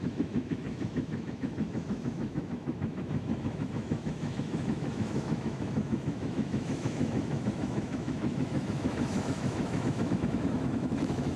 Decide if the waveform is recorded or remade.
remade